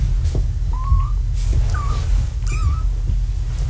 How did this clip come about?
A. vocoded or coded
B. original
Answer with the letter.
B